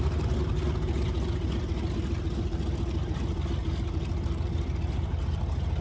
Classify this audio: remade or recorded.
recorded